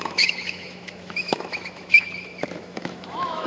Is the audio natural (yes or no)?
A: no